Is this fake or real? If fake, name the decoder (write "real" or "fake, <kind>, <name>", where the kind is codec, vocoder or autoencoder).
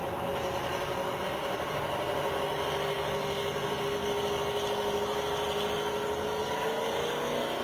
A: real